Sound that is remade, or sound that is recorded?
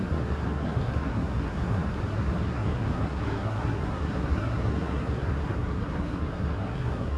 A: remade